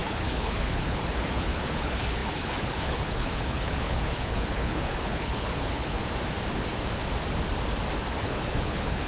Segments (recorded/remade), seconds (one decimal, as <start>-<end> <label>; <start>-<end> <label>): 0.0-6.0 remade; 6.0-8.2 recorded; 8.2-9.1 remade